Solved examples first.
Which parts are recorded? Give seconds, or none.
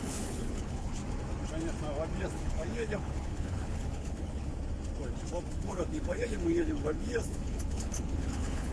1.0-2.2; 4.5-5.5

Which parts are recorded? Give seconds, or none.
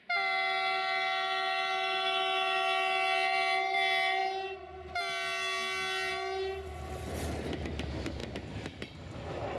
0.0-9.6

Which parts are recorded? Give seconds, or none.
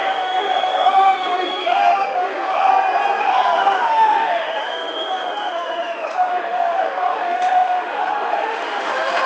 2.7-3.2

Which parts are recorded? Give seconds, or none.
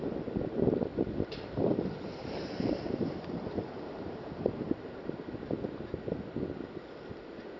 0.0-0.9; 5.0-7.6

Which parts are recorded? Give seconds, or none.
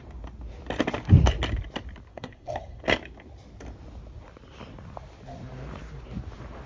0.0-2.1; 2.8-6.7